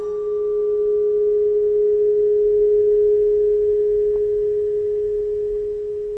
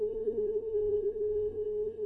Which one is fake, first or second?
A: second